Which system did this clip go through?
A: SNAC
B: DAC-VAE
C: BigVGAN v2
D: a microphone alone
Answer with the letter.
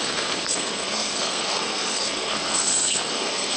A